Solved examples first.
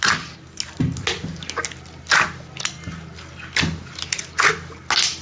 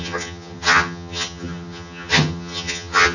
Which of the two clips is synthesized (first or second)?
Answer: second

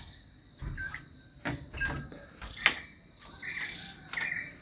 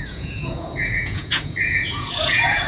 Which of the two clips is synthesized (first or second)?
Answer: second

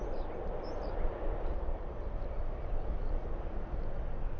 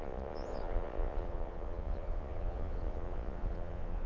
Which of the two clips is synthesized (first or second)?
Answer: second